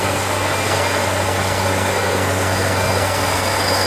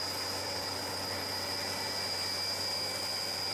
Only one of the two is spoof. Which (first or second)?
first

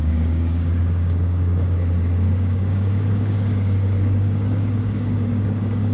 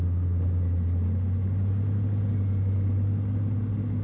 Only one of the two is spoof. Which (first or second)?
first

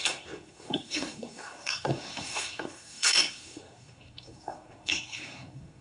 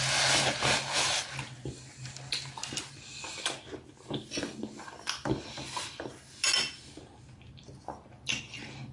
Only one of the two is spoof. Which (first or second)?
first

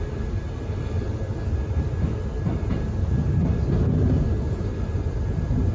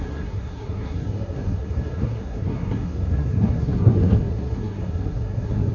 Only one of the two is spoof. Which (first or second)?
second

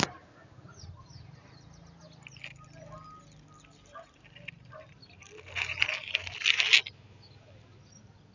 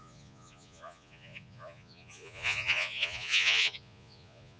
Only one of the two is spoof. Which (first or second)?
second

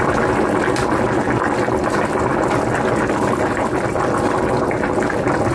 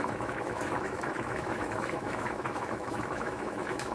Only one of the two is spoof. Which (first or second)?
second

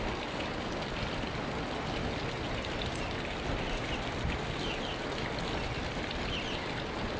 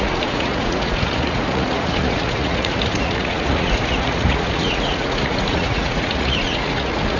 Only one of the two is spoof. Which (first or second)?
second